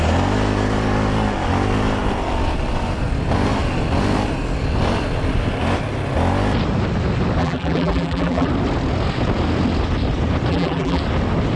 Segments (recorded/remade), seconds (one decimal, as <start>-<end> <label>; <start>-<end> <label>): 0.0-7.4 recorded; 7.4-8.5 remade; 8.5-10.5 recorded; 10.5-11.0 remade; 11.0-11.6 recorded